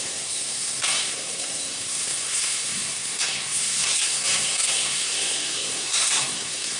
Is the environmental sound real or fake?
fake